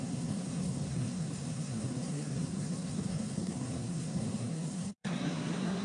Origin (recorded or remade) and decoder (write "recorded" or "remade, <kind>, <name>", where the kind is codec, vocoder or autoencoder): remade, codec, SNAC